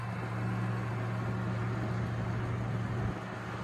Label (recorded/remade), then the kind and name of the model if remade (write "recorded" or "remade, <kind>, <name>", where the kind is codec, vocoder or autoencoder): recorded